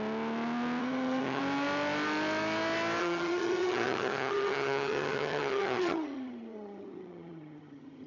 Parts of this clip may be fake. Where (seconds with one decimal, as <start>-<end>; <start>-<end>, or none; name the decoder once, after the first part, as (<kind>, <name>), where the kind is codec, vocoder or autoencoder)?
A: 0.8-1.4 (vocoder, HiFi-GAN); 3.0-8.1